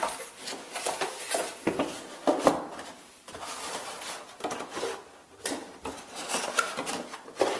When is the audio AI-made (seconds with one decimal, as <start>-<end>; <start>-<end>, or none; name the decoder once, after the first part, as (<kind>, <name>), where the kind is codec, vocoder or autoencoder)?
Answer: 5.2-6.0 (vocoder, BigVGAN v2)